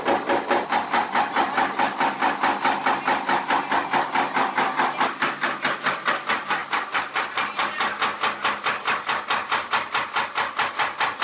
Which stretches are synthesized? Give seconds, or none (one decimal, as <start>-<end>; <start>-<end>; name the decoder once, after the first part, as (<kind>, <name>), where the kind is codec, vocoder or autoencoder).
none